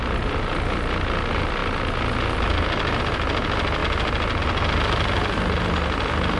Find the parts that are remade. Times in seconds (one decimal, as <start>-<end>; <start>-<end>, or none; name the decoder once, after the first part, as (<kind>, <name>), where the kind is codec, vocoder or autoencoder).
none